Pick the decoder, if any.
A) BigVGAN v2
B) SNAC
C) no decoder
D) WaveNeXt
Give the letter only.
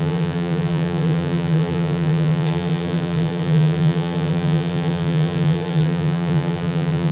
A